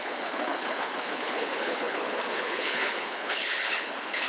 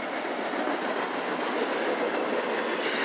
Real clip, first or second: second